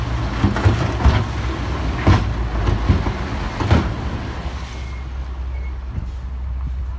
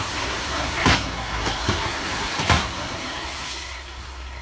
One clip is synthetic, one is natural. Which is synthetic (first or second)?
second